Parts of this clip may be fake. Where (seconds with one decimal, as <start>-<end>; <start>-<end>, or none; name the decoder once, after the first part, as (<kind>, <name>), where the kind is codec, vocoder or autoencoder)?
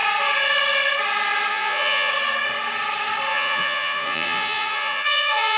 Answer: 1.5-2.1 (vocoder, Vocos); 3.3-5.6